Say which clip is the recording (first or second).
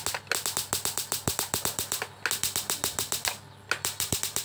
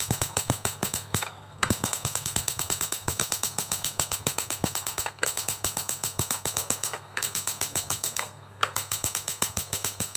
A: first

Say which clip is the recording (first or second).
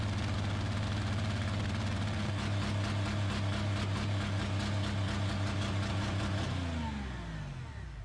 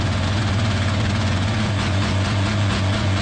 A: first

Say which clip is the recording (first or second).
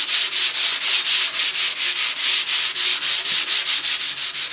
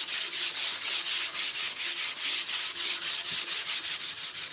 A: first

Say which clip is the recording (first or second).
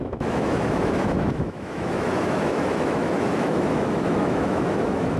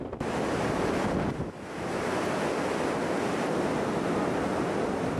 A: second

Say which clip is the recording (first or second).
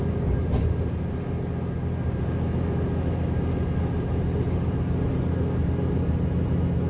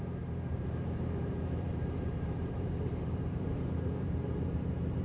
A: first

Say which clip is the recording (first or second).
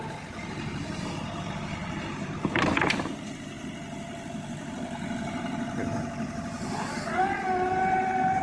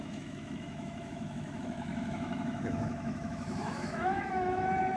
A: first